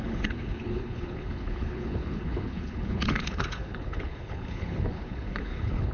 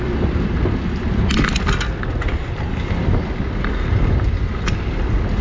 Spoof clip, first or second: first